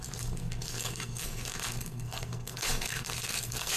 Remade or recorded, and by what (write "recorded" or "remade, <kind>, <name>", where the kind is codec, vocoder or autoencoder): remade, codec, SNAC